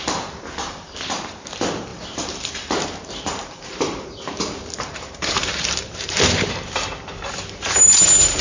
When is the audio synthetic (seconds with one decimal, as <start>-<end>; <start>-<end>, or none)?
1.9-6.5